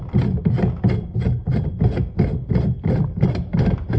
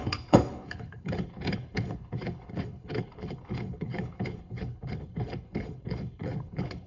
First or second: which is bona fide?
first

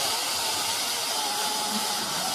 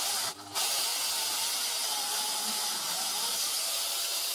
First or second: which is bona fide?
second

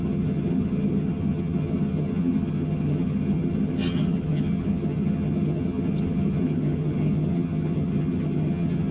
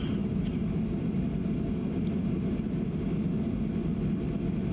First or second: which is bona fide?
second